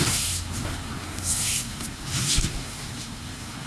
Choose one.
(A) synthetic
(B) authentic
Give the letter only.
A